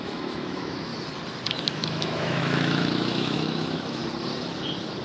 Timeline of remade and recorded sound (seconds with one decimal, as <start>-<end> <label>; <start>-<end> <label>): 0.0-0.9 remade; 0.9-1.6 recorded; 1.6-4.0 remade; 4.0-5.0 recorded

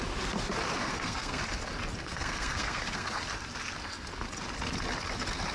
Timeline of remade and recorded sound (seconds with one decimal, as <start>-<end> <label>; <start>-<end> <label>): 0.0-0.9 recorded; 0.9-1.4 remade; 1.4-2.0 recorded; 2.0-3.1 remade; 3.1-5.5 recorded

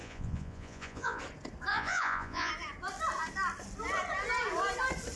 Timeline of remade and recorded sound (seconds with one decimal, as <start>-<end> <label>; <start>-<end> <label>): 0.0-1.2 remade; 1.2-1.7 recorded; 1.7-2.5 remade; 2.5-5.2 recorded

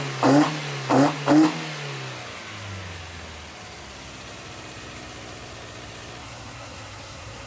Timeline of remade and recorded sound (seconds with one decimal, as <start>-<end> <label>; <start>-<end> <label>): 0.0-6.2 recorded; 6.2-7.5 remade

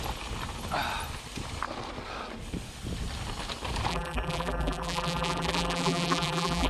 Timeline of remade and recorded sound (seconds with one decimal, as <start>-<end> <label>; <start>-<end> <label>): 0.0-3.9 recorded; 3.9-6.7 remade